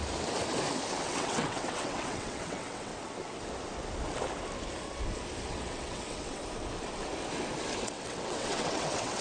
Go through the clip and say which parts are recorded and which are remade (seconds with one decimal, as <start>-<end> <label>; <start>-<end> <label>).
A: 0.0-1.0 recorded; 1.0-2.9 remade; 2.9-5.5 recorded; 5.5-6.4 remade; 6.4-7.8 recorded; 7.8-9.2 remade

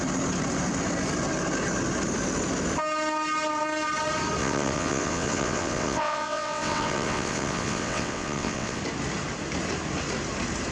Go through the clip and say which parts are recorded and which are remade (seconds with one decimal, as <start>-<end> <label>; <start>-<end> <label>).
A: 0.0-4.4 recorded; 4.4-8.8 remade; 8.8-10.7 recorded